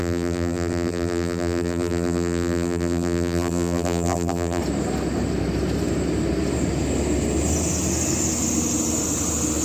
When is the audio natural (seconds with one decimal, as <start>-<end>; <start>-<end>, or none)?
4.6-9.6